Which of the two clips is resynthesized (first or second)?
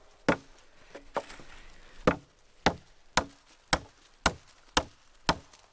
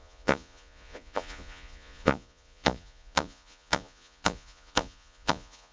second